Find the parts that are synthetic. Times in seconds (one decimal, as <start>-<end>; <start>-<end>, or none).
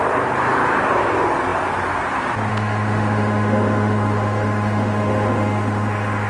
2.5-6.3